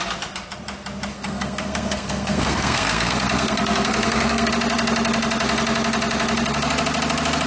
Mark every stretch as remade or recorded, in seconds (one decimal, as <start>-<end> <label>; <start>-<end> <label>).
0.0-1.1 recorded; 1.1-4.5 remade; 4.5-7.5 recorded